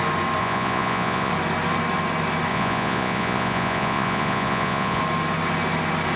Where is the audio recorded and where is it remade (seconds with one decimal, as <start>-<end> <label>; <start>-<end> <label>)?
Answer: 0.0-0.4 recorded; 0.4-1.3 remade; 1.3-2.5 recorded; 2.5-5.0 remade; 5.0-6.2 recorded